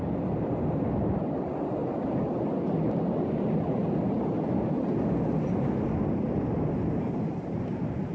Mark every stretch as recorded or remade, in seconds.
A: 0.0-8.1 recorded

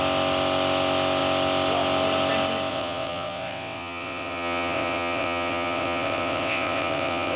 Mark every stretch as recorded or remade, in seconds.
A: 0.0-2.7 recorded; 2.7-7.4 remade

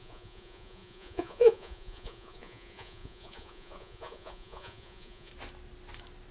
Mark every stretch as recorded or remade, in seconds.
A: 0.0-5.3 remade; 5.3-6.3 recorded

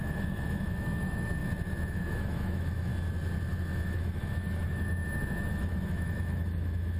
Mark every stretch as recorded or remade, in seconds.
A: 0.0-1.4 remade; 1.4-1.9 recorded; 1.9-2.9 remade; 2.9-3.5 recorded; 3.5-7.0 remade

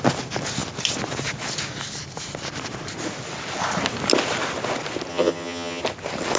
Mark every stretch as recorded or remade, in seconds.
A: 0.0-5.1 recorded; 5.1-5.8 remade; 5.8-6.4 recorded